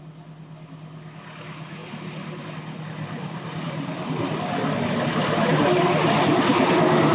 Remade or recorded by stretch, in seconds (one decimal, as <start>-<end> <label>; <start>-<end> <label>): 0.0-3.0 recorded; 3.0-4.3 remade; 4.3-7.1 recorded